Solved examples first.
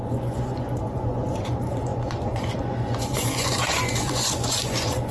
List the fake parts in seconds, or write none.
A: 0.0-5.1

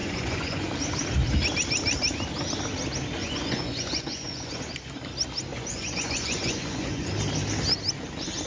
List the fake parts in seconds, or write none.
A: 0.0-0.7; 3.2-4.6; 5.5-7.1

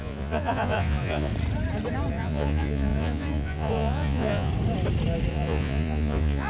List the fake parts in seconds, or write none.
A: 0.0-1.3; 2.1-4.5; 5.3-6.5

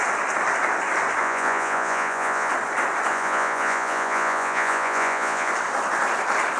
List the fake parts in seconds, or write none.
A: 1.2-2.5; 3.1-5.5